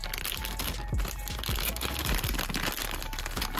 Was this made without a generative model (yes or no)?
yes